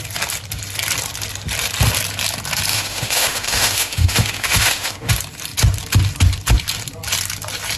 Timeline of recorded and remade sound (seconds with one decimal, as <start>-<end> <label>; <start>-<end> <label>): 0.0-2.7 recorded; 2.7-5.1 remade; 5.1-7.8 recorded